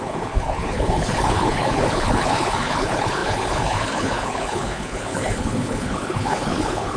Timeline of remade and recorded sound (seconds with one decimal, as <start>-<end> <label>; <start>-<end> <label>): 0.0-7.0 remade